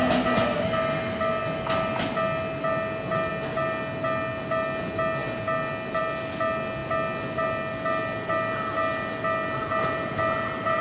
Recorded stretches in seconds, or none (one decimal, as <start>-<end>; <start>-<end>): 0.0-10.8